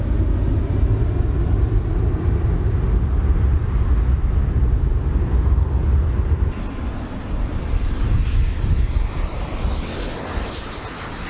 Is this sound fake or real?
real